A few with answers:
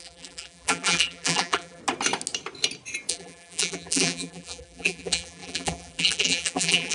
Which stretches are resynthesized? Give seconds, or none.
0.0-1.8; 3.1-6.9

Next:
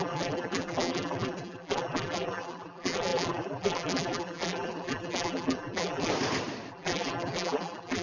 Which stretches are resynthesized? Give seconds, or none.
0.0-6.1; 6.7-8.0

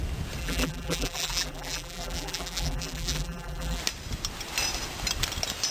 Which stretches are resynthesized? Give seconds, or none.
0.4-3.8